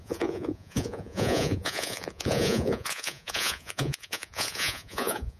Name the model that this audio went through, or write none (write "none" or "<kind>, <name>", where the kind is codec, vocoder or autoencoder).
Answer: vocoder, Vocos